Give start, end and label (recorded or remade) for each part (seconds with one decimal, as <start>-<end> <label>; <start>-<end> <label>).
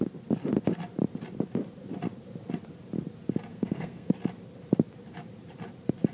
0.0-3.5 recorded; 3.5-4.1 remade; 4.1-6.1 recorded